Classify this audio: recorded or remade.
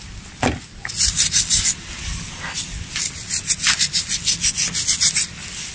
recorded